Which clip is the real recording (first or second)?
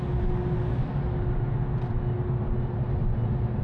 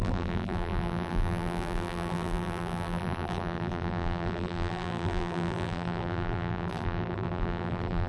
first